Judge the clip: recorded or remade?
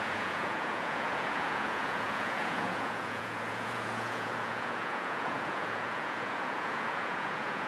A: remade